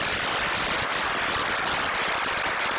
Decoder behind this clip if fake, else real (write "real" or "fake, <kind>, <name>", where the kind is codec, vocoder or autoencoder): real